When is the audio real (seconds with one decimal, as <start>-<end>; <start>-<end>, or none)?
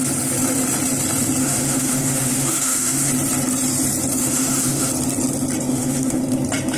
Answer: 0.0-1.4; 3.1-4.2; 4.9-5.7; 6.2-6.8